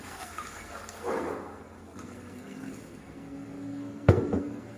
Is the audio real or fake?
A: fake